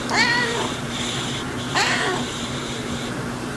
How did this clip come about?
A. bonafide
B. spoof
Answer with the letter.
B